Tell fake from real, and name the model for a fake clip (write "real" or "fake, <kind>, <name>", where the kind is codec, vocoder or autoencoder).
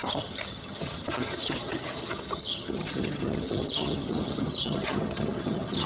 fake, vocoder, HiFi-GAN